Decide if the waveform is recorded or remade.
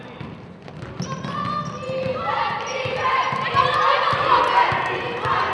recorded